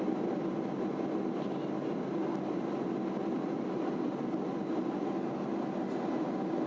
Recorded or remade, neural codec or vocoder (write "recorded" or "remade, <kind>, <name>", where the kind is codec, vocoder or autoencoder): recorded